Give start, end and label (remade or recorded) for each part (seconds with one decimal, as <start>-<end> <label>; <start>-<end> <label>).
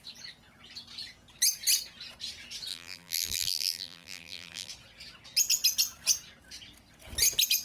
0.0-2.7 recorded; 2.7-4.7 remade; 4.7-7.6 recorded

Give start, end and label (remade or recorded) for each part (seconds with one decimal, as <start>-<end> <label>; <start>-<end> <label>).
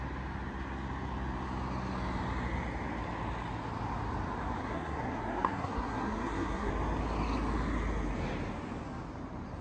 0.0-4.6 recorded; 4.6-6.7 remade; 6.7-9.6 recorded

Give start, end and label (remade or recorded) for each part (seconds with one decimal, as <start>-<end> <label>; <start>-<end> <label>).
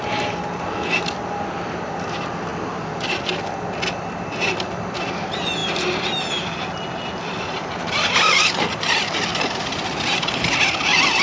0.0-9.3 recorded; 9.3-10.6 remade; 10.6-11.2 recorded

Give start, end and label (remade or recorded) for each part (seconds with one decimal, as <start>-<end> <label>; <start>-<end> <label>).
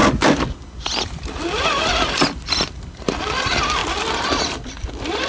0.0-3.2 recorded; 3.2-5.3 remade